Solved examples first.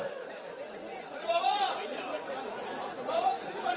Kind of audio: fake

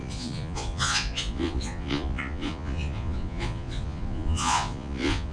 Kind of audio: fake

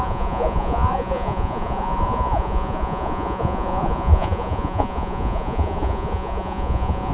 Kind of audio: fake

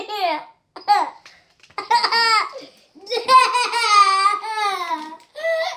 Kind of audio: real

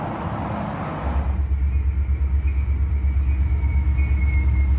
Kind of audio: real